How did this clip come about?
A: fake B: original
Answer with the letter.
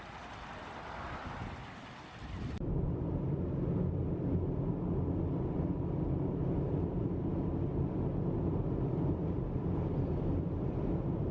B